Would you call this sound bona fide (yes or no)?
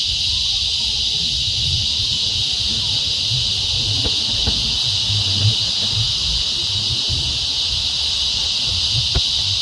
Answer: yes